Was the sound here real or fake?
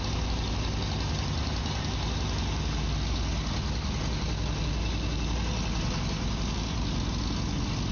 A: real